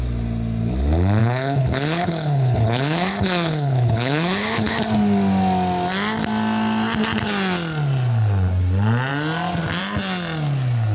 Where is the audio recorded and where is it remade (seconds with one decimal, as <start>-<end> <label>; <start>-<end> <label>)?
0.0-1.2 recorded; 1.2-4.8 remade; 4.8-10.9 recorded